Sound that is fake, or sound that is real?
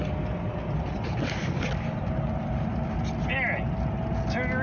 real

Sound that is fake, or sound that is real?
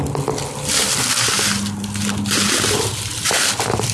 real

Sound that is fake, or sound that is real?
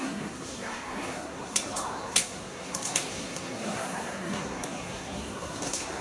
fake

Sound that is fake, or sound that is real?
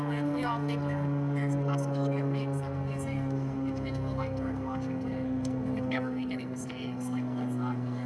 fake